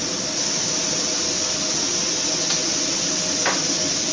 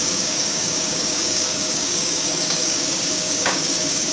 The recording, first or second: first